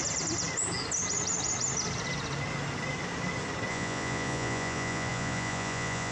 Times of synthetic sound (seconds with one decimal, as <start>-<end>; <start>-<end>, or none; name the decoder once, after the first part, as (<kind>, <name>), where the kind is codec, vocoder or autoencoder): 3.7-6.1 (vocoder, Vocos)